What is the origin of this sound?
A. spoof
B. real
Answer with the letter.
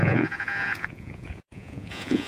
A